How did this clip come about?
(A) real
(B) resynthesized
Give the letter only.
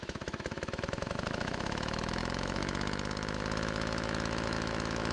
B